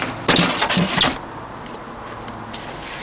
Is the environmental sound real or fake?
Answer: real